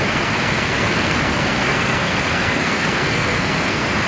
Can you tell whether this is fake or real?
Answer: fake